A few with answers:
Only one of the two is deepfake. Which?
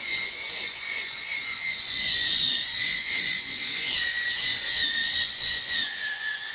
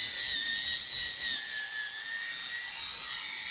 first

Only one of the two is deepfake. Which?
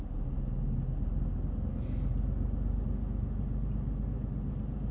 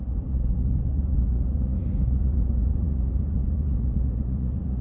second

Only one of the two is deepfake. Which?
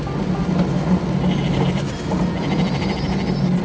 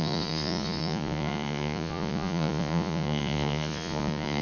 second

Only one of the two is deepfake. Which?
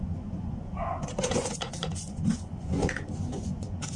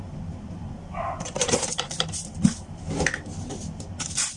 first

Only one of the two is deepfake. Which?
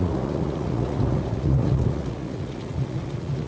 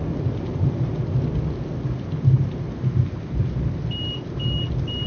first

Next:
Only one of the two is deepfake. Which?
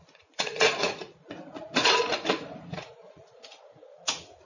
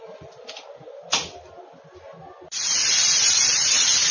first